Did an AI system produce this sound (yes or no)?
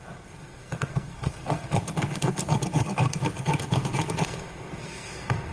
yes